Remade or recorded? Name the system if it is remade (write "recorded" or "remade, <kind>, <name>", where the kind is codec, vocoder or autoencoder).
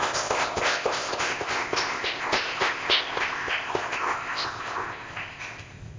remade, codec, ZipCodec